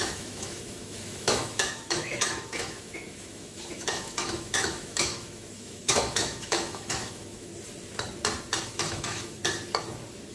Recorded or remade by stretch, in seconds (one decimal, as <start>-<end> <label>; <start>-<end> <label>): 0.0-7.5 remade; 7.5-8.6 recorded; 8.6-9.4 remade; 9.4-10.3 recorded